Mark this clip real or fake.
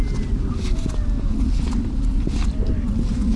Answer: real